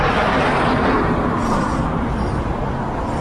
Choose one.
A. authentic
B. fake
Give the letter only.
A